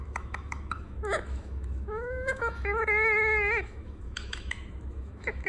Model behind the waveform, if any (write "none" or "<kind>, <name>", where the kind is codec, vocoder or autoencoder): autoencoder, DAC-VAE